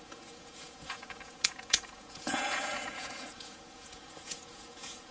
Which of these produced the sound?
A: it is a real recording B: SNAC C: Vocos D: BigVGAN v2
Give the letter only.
C